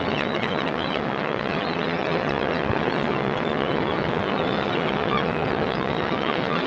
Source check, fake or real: fake